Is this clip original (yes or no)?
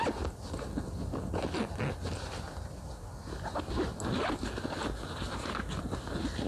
yes